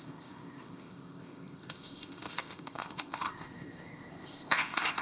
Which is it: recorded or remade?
remade